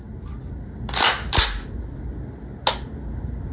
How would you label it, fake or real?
real